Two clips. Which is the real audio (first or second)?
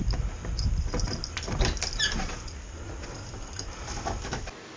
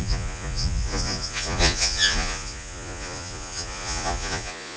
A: first